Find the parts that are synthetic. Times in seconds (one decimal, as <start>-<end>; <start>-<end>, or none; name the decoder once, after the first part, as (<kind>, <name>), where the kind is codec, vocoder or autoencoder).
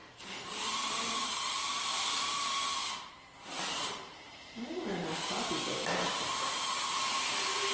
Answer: 0.0-2.8 (vocoder, BigVGAN v2); 3.4-4.9; 6.1-7.7